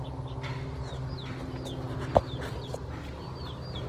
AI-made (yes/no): no